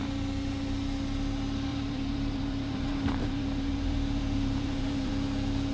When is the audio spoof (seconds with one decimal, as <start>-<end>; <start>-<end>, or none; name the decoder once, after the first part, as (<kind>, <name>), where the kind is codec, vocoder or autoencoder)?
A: 1.7-5.1 (vocoder, BigVGAN v2)